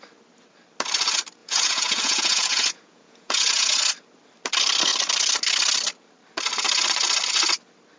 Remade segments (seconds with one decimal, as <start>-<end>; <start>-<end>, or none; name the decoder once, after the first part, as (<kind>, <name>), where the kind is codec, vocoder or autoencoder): 1.4-3.8 (vocoder, Vocos)